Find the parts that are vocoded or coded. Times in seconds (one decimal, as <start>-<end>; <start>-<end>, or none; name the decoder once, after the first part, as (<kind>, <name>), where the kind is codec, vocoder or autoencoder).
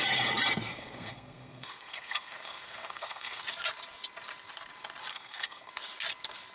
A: 0.7-3.4 (codec, SNAC); 5.1-5.7